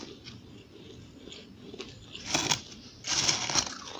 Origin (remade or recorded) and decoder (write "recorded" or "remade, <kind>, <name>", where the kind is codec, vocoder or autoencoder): recorded